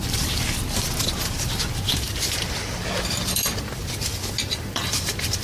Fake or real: fake